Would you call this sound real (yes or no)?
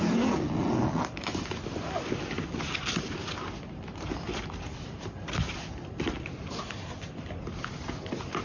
yes